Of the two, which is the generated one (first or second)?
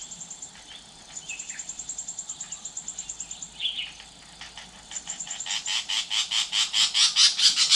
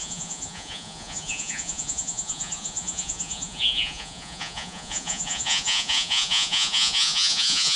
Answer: second